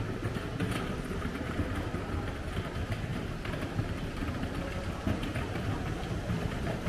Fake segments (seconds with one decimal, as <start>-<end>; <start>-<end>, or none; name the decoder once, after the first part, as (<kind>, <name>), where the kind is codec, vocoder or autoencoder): 3.1-6.9 (vocoder, BigVGAN v2)